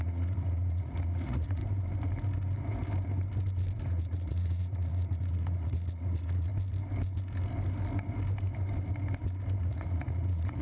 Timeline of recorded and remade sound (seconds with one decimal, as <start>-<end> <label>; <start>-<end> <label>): 0.0-1.6 remade; 1.6-3.8 recorded; 3.8-6.5 remade; 6.5-9.6 recorded; 9.6-10.6 remade